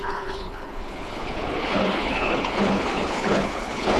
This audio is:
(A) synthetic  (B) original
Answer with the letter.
A